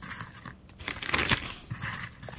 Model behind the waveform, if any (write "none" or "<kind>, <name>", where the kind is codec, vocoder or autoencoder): none